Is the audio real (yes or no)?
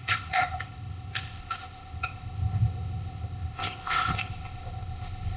no